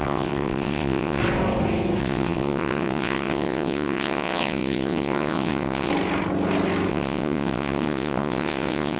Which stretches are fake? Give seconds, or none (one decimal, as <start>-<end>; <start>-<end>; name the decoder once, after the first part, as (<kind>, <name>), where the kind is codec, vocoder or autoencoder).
0.0-1.2 (vocoder, WaveNeXt); 2.0-5.9; 6.9-9.0